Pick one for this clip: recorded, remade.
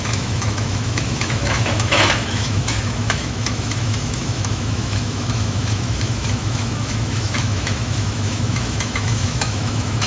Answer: remade